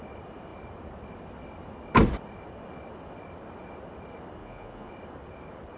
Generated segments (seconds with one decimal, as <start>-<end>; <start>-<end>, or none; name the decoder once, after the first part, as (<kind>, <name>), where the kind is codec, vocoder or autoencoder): 4.4-4.9 (vocoder, Vocos)